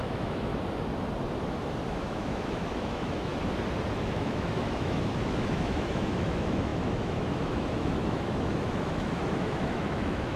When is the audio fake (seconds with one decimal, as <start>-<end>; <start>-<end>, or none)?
0.0-0.5; 2.0-3.3; 3.9-10.4